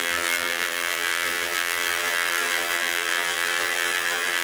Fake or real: fake